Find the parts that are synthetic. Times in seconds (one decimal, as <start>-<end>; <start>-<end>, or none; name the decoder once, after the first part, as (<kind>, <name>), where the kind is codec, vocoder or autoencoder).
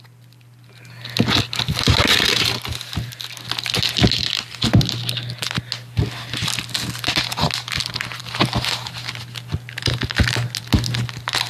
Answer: none